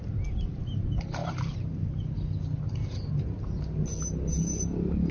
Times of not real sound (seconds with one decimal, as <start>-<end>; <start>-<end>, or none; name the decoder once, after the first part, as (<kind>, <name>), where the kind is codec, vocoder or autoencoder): none